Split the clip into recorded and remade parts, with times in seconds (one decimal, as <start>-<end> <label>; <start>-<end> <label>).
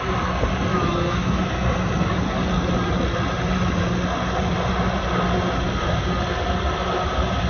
0.0-0.7 recorded; 0.7-1.5 remade; 1.5-7.5 recorded